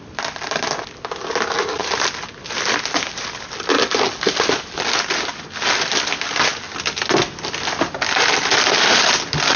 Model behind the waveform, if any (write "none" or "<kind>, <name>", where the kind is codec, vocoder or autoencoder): none